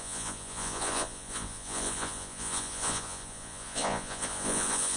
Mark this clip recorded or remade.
remade